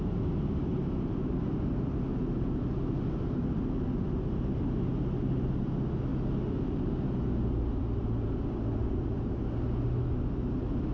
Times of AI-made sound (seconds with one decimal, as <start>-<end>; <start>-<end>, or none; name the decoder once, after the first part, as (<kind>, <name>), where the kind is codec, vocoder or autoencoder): 2.1-2.6 (vocoder, BigVGAN v2); 8.8-9.4